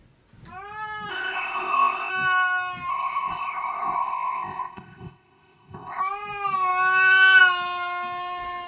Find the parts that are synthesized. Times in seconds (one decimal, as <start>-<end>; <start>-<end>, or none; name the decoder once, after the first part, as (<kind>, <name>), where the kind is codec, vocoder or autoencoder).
1.1-2.1 (codec, ZipCodec); 2.9-6.0